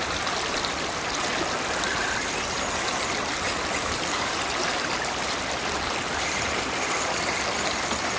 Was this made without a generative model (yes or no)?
yes